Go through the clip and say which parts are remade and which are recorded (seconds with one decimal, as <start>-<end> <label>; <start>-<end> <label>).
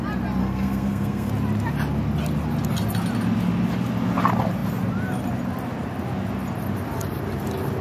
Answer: 0.0-0.4 recorded; 0.4-1.3 remade; 1.3-7.8 recorded